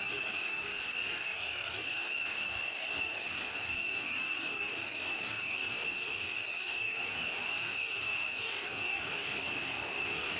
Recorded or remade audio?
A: remade